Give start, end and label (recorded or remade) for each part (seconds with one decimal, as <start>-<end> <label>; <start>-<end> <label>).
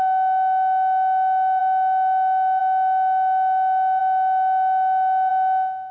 0.0-5.9 recorded